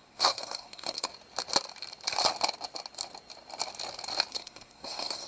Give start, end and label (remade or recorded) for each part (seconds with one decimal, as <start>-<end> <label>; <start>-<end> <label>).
0.0-1.1 remade; 1.1-4.3 recorded; 4.3-5.3 remade